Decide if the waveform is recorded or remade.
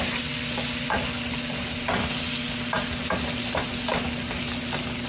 recorded